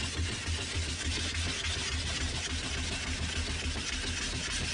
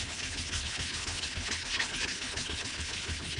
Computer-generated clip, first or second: second